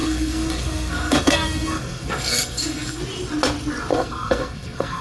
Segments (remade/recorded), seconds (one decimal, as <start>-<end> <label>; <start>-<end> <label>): 0.0-3.0 remade; 3.0-3.9 recorded; 3.9-5.0 remade